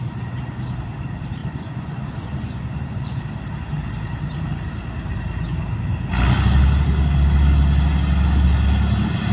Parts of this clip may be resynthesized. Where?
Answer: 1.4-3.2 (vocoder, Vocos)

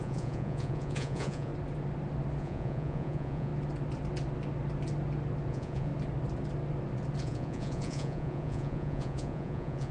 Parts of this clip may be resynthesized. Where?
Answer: 0.0-1.5 (vocoder, Vocos); 2.4-3.5; 5.5-5.9; 7.2-9.9

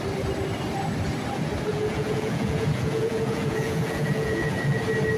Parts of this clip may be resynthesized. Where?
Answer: 1.7-4.8 (vocoder, Vocos)

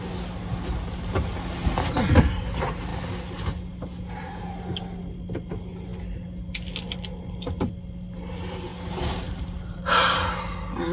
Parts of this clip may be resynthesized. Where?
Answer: none

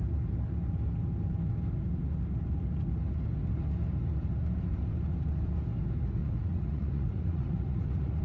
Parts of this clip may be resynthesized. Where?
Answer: 6.2-8.2 (vocoder, Vocos)

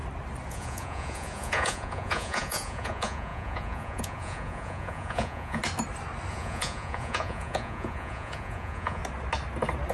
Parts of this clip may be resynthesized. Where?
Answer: 0.5-5.6 (vocoder, Vocos); 6.3-9.0

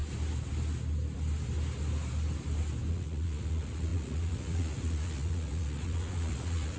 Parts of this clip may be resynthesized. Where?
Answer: 2.9-6.8 (vocoder, Vocos)